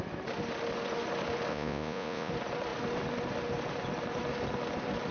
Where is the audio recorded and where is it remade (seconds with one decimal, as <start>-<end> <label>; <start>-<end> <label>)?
0.0-1.5 recorded; 1.5-2.3 remade; 2.3-5.1 recorded